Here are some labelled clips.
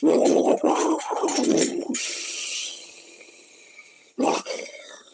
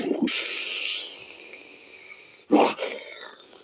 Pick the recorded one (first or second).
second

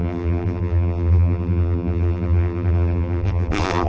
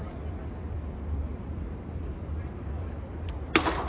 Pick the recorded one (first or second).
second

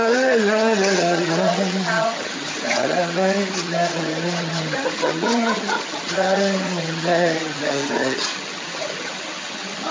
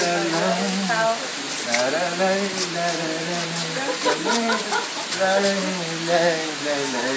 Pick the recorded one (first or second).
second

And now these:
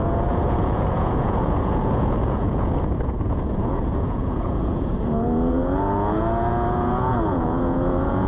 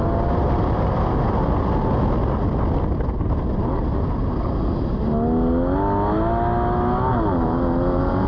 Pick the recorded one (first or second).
second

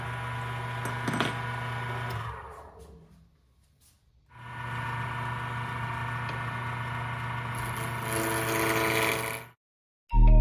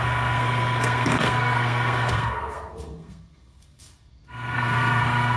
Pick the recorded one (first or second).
first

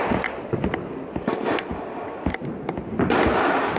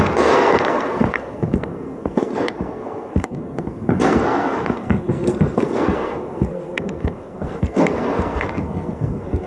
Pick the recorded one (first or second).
first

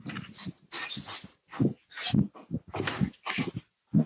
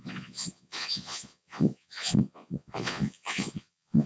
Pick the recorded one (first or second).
first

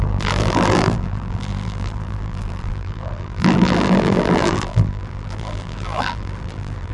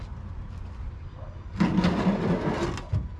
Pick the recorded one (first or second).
second